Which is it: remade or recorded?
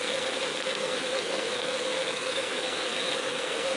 remade